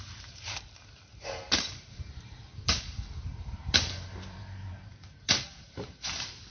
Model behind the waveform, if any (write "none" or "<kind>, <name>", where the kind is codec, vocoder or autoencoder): vocoder, BigVGAN v2